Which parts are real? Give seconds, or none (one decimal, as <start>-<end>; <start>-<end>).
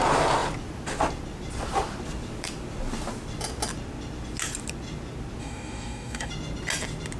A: 0.0-5.4; 6.3-7.2